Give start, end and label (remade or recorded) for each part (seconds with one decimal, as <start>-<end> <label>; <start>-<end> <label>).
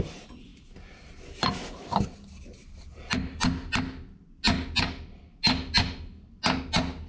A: 0.0-7.1 recorded